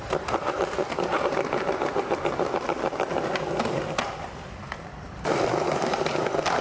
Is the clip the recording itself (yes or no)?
no